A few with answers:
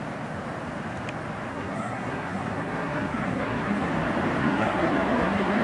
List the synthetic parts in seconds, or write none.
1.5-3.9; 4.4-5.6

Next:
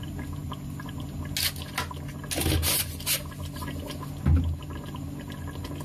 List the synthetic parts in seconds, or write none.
none

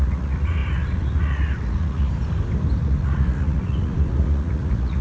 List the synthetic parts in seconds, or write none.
0.0-2.1; 2.8-5.0

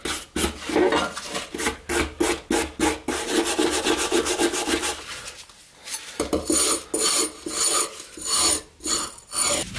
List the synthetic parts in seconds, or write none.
5.8-6.4

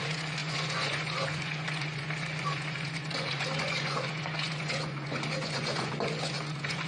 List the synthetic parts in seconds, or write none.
0.0-6.9

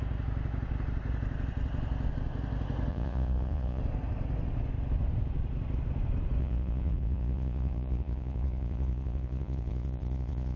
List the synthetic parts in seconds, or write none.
2.9-3.8; 6.4-10.6

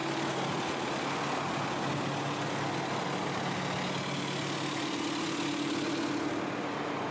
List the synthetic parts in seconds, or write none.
none

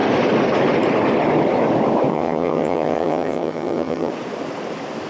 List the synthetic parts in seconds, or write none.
2.1-4.1